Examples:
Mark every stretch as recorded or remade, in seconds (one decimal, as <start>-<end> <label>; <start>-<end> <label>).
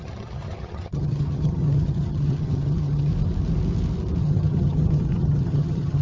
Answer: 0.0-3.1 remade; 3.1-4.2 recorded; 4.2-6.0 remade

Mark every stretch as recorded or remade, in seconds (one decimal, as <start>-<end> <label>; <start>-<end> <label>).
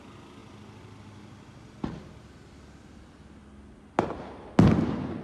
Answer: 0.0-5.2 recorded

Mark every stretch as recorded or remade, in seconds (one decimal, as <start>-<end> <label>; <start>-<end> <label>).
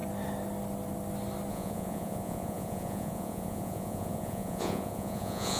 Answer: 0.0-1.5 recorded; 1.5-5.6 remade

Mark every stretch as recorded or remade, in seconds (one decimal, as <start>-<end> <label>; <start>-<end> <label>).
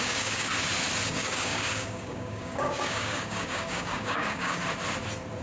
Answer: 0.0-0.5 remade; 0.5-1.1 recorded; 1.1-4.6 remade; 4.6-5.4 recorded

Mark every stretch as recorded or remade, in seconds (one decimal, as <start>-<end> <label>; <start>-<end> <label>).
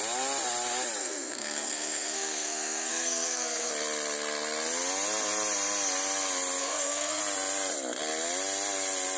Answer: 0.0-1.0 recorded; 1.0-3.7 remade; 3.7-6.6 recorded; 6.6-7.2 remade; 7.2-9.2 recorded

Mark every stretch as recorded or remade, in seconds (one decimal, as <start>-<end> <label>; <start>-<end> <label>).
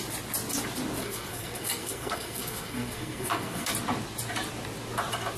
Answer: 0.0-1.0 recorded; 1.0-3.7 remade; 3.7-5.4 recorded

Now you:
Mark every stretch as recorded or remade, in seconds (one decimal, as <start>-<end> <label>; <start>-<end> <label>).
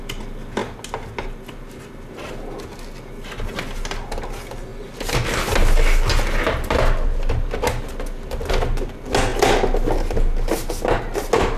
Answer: 0.0-11.6 recorded